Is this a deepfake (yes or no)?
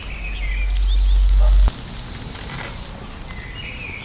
no